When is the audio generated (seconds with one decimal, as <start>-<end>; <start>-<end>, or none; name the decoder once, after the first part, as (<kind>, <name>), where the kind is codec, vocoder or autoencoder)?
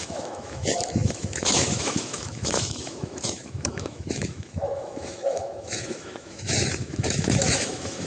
0.0-8.1 (autoencoder, DAC-VAE)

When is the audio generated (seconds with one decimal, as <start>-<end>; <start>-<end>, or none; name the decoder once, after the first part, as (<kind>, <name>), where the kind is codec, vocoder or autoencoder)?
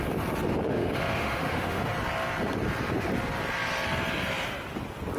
0.7-1.9 (autoencoder, DAC-VAE)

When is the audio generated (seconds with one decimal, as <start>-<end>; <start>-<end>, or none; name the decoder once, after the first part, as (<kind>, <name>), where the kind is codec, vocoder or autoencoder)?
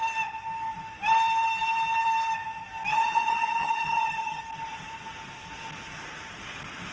2.9-4.4 (vocoder, HiFi-GAN)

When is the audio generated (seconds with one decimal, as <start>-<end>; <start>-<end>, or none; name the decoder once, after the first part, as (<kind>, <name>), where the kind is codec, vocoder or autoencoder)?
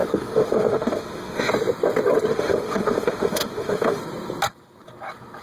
0.0-1.5 (autoencoder, DAC-VAE); 2.3-4.0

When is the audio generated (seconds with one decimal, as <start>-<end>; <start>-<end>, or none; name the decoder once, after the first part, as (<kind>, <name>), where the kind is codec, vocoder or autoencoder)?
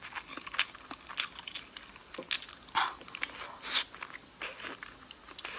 none